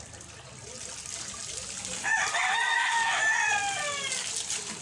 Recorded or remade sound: recorded